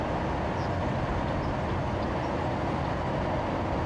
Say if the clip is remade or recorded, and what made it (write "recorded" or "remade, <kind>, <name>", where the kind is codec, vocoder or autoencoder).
recorded